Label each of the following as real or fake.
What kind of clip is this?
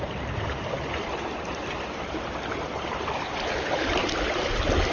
real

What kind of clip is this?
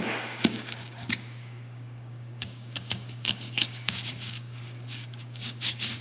fake